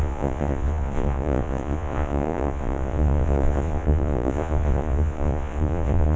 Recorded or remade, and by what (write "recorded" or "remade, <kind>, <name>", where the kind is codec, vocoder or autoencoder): remade, vocoder, Vocos